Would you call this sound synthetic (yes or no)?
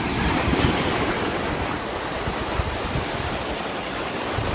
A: no